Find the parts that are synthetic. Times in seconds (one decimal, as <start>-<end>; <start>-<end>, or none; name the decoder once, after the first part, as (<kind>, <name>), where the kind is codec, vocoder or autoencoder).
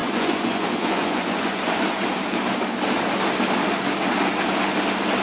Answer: 0.0-2.0 (vocoder, Vocos)